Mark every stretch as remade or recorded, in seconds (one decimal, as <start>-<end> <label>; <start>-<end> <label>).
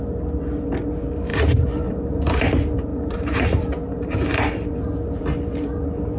0.0-1.3 recorded; 1.3-2.4 remade; 2.4-2.9 recorded; 2.9-5.2 remade; 5.2-6.2 recorded